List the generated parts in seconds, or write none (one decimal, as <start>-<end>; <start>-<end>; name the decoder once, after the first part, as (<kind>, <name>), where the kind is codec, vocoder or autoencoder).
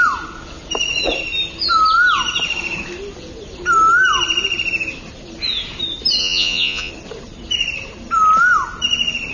6.2-6.9 (vocoder, Vocos)